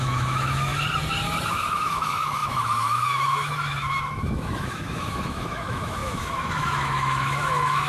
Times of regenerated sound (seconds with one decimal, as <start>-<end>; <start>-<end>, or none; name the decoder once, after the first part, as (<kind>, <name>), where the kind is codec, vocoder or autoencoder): 0.0-0.7 (autoencoder, DAC-VAE); 1.5-7.9